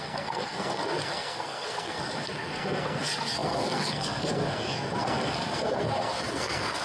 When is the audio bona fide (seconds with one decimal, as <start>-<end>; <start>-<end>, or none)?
none